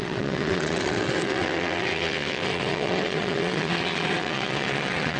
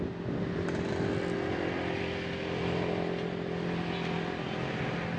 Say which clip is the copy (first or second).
first